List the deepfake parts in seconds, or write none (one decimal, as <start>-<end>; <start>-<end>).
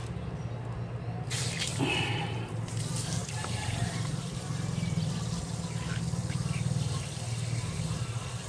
3.2-5.1